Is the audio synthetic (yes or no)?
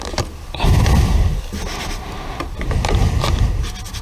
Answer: no